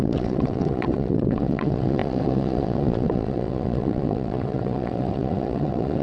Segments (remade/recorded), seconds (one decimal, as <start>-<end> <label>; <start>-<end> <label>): 0.0-6.0 remade